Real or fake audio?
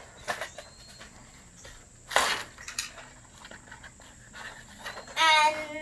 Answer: real